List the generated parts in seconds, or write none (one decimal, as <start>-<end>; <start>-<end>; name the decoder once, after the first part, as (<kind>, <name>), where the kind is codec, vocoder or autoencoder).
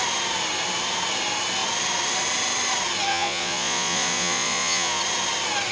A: 3.1-5.0 (vocoder, Vocos)